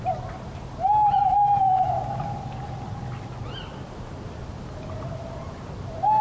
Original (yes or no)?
yes